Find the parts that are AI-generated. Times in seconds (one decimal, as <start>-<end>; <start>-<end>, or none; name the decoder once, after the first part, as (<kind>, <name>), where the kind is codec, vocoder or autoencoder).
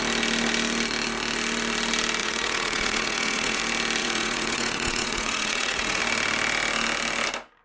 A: 2.2-3.6 (vocoder, Vocos); 4.0-6.0